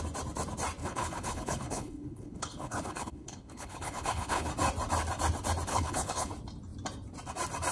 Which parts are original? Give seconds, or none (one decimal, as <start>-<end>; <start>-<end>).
0.0-0.8; 4.5-5.7; 6.3-7.7